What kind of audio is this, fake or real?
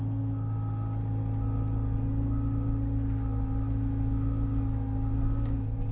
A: real